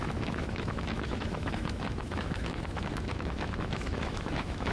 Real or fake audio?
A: fake